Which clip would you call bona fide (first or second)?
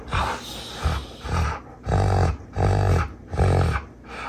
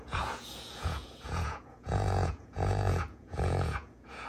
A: first